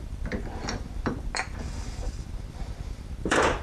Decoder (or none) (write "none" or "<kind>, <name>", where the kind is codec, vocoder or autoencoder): vocoder, BigVGAN v2